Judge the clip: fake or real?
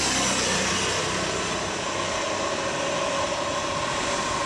real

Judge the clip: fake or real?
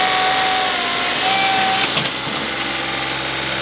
real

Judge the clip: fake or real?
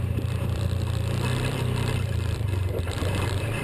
fake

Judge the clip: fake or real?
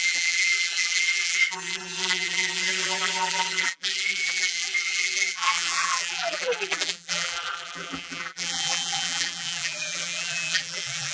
fake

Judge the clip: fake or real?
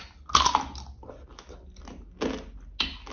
real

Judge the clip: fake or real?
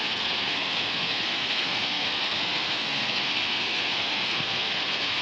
fake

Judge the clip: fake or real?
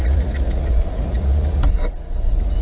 fake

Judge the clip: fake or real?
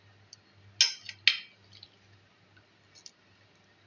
real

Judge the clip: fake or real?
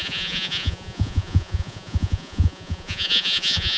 fake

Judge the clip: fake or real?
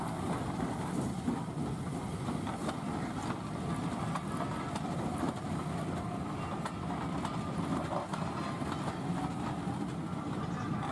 real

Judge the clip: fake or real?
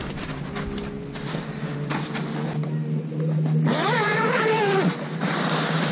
real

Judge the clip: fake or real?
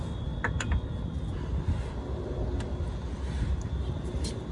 real